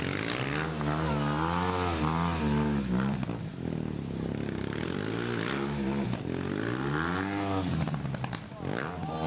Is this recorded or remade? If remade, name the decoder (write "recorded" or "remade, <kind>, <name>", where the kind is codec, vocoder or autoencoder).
recorded